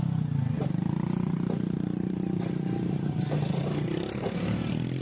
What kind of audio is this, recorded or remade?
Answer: remade